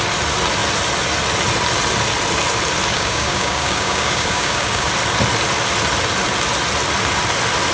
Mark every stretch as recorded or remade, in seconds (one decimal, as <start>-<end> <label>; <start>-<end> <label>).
0.0-2.9 recorded; 2.9-4.9 remade; 4.9-7.7 recorded